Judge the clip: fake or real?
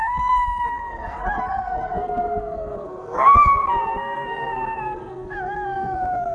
fake